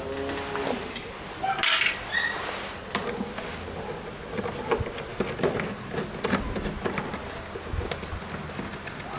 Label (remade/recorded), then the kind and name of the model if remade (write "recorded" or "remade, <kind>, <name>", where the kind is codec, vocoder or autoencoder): recorded